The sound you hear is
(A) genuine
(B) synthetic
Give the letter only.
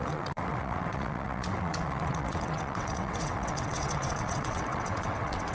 B